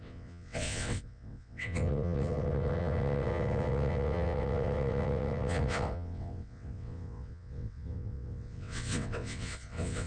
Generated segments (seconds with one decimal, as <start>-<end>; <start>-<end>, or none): 0.0-10.1